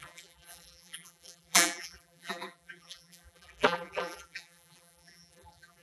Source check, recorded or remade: remade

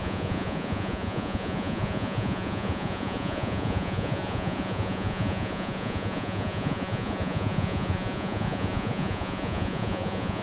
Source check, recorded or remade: remade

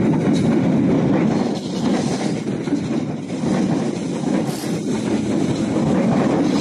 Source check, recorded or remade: recorded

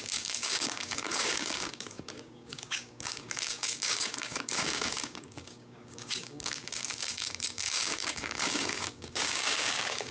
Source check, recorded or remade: remade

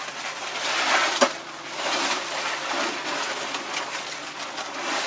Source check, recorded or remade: recorded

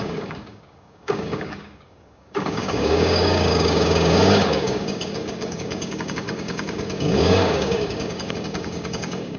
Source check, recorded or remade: remade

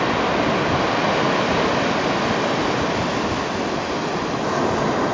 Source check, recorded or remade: recorded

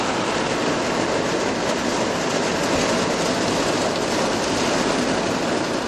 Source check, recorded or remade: recorded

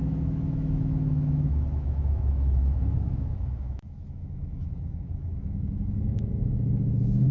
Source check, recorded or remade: remade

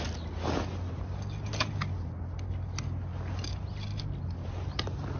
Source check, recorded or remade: recorded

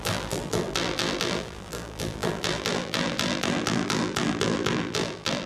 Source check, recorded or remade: remade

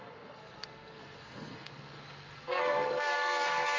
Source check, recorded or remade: remade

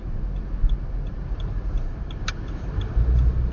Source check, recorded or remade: recorded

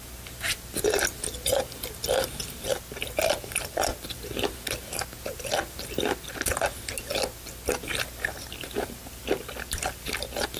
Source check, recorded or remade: recorded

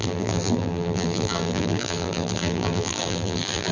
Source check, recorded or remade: remade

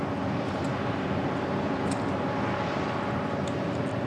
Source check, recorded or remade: recorded